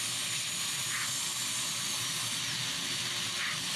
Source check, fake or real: real